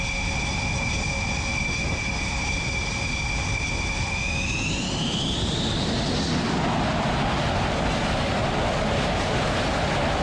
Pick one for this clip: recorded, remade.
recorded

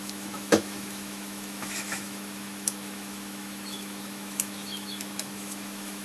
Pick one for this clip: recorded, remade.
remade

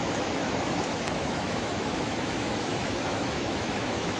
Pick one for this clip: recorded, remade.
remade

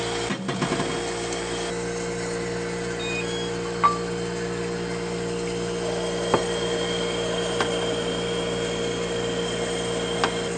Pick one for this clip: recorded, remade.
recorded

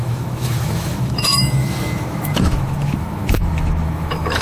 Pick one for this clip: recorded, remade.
remade